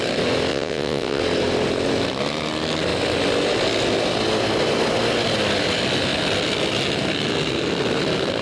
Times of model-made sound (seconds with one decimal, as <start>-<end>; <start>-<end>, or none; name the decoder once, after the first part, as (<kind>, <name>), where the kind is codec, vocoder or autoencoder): 0.5-1.2 (vocoder, WaveNeXt)